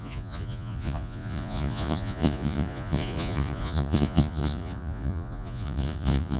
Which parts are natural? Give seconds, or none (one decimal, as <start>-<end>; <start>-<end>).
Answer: none